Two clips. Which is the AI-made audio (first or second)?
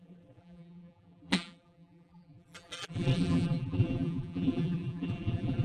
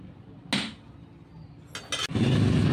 first